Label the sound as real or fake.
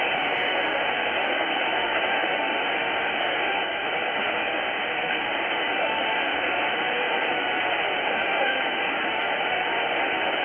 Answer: fake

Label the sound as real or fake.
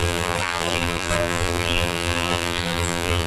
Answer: fake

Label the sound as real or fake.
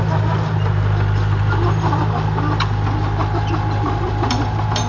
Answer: fake